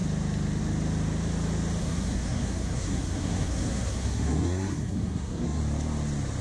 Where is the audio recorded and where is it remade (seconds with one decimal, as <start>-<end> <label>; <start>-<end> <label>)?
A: 0.0-1.8 recorded; 1.8-5.6 remade; 5.6-6.4 recorded